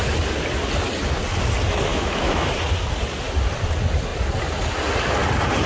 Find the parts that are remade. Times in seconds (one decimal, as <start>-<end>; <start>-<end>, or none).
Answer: 1.9-2.5